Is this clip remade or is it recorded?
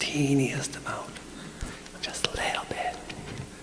recorded